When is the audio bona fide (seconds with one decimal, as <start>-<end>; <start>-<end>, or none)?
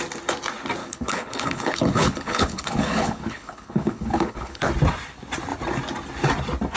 0.0-0.8; 4.7-6.8